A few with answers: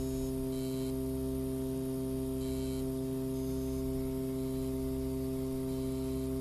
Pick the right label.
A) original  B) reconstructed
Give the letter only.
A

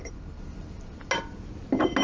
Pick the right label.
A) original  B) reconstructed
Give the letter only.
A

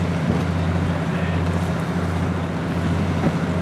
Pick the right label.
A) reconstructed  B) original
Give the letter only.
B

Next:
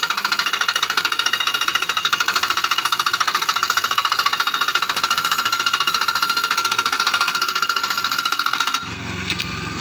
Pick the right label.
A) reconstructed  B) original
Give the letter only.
A